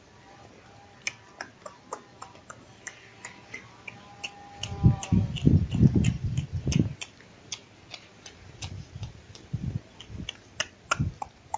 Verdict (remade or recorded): recorded